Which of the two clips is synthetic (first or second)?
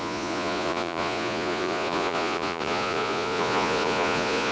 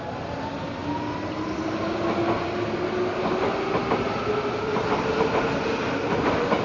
first